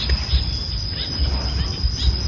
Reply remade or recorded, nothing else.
recorded